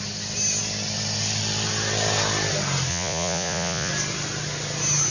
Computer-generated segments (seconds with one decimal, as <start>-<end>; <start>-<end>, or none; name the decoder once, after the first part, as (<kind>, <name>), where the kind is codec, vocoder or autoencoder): 2.9-3.9 (vocoder, Vocos)

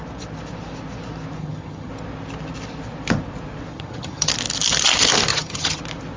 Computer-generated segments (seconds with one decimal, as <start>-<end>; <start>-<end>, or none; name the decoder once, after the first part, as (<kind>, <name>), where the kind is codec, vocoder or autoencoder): 1.4-1.9 (vocoder, HiFi-GAN); 3.7-4.3; 5.3-5.8

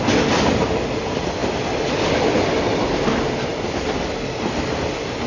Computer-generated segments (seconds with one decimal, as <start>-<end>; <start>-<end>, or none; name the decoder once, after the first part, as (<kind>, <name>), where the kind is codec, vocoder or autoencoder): none

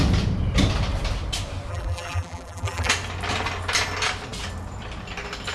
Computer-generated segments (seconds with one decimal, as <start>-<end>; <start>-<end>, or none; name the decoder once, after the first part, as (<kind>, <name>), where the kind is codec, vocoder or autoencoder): 1.7-2.9 (vocoder, BigVGAN v2)

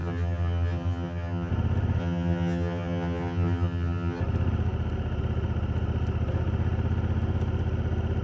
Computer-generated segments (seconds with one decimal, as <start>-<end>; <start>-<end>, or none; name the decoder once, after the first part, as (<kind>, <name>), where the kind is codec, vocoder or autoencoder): 0.0-1.5 (vocoder, HiFi-GAN); 2.0-4.2

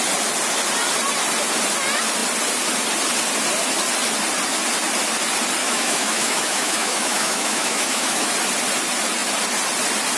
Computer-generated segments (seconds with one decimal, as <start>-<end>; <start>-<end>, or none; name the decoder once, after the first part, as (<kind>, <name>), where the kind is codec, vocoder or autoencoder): 5.6-8.3 (autoencoder, DAC-VAE)